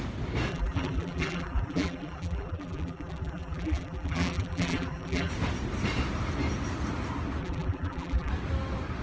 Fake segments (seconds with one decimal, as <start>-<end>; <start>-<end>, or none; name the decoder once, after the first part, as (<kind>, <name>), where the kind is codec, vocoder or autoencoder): 0.5-5.3 (vocoder, BigVGAN v2); 7.4-8.3